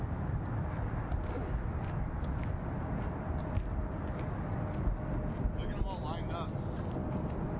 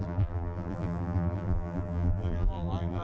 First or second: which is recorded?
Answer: first